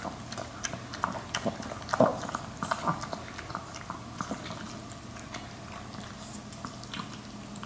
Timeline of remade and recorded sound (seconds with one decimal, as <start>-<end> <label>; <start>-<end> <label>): 0.0-7.7 recorded